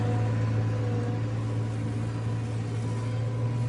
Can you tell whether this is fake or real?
real